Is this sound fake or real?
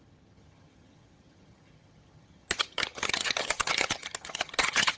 fake